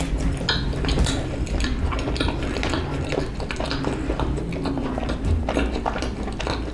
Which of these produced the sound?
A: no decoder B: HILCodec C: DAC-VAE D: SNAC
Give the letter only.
A